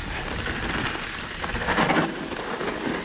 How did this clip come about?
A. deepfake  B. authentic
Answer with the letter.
B